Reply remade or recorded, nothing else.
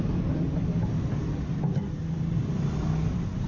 recorded